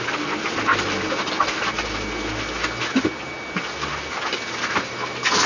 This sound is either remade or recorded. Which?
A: recorded